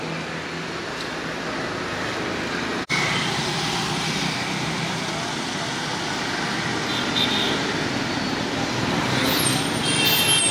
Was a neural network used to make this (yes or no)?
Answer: no